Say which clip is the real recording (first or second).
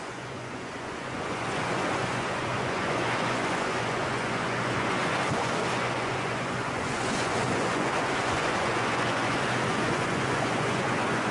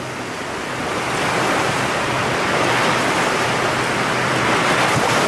second